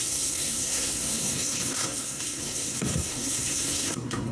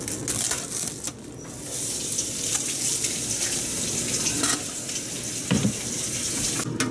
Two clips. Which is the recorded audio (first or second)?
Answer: second